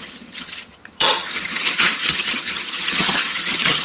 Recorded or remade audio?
remade